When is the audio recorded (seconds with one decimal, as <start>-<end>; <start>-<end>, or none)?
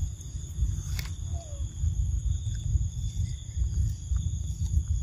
0.0-3.3; 4.3-5.0